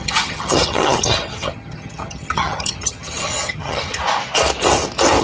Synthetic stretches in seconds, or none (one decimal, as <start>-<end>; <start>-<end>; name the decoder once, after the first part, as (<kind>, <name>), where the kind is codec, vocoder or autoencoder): 0.0-4.0 (vocoder, HiFi-GAN)